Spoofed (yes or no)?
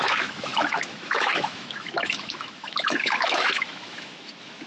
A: yes